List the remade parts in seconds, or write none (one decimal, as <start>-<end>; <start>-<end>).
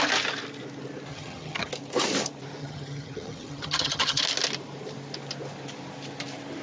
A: 1.1-1.7; 2.6-4.2